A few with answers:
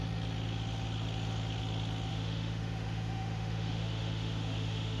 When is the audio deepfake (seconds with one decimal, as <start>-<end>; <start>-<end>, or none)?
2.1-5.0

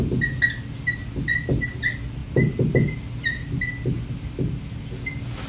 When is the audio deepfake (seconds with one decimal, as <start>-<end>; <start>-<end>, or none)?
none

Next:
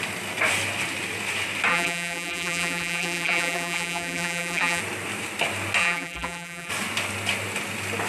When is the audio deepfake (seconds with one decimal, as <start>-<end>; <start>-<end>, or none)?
1.7-4.8; 5.8-6.7

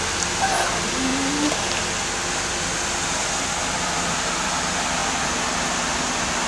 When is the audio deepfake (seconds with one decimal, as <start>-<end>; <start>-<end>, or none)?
none